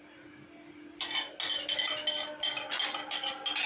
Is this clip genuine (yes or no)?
yes